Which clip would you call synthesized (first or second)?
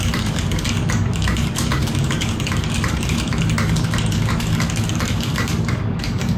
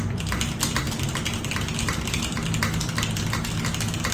first